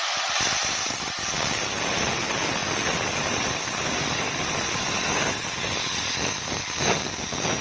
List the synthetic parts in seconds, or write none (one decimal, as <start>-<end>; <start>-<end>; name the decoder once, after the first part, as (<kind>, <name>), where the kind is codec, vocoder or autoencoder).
none